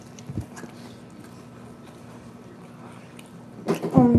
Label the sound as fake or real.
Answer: real